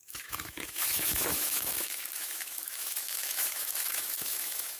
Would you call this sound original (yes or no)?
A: no